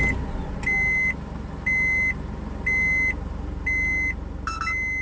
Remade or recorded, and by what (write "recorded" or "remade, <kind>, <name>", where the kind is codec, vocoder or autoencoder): recorded